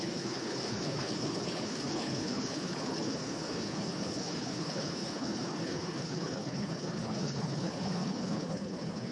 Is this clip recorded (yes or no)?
no